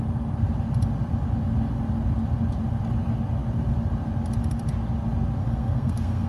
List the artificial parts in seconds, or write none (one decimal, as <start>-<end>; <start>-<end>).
5.4-6.3